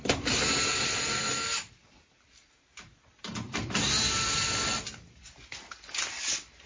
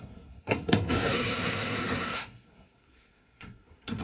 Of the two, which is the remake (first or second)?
second